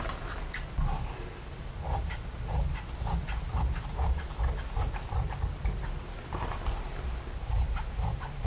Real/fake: real